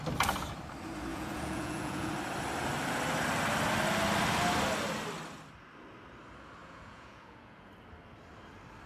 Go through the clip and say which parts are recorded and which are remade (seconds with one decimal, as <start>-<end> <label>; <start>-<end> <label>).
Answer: 0.0-1.1 recorded; 1.1-2.1 remade; 2.1-6.6 recorded; 6.6-7.7 remade; 7.7-8.9 recorded